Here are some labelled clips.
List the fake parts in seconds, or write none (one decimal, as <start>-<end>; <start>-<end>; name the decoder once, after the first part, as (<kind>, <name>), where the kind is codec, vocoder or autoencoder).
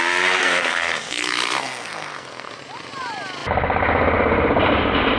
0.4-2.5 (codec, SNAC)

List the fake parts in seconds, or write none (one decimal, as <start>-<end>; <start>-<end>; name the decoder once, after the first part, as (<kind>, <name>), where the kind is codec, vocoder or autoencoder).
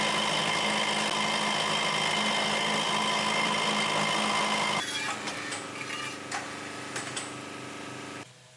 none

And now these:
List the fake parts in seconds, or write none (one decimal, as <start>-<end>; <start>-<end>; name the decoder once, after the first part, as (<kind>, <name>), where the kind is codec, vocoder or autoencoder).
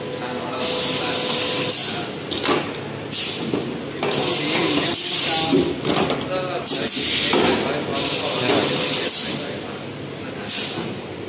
none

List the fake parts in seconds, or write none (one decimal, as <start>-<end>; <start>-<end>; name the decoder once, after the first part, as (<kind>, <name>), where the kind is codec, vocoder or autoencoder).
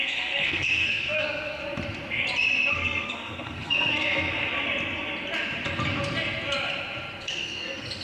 0.0-1.6 (codec, SNAC); 2.7-4.5; 7.2-8.0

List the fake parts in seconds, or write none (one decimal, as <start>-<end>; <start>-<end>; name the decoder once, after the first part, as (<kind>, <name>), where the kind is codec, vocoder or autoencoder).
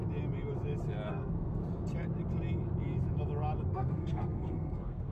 1.1-1.6 (codec, SNAC); 3.7-5.1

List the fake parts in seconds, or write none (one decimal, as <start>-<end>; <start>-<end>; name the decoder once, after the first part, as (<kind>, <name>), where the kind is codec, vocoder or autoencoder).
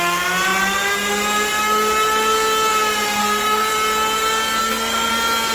3.2-3.7 (codec, SNAC); 4.6-5.1